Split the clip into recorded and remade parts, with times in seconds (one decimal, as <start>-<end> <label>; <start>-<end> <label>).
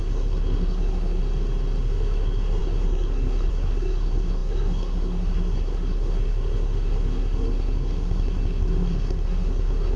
0.0-1.2 remade; 1.2-1.8 recorded; 1.8-10.0 remade